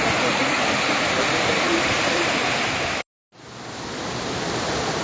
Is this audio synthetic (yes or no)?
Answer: no